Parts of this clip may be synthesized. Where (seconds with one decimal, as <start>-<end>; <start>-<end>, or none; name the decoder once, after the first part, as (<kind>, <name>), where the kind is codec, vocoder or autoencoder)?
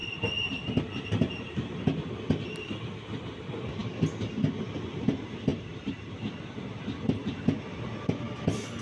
0.0-1.7 (vocoder, BigVGAN v2); 5.5-6.1